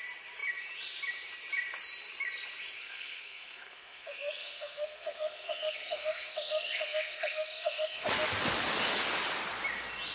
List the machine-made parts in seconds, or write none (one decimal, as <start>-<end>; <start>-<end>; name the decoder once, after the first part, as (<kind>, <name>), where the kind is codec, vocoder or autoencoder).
2.8-8.0 (codec, SNAC)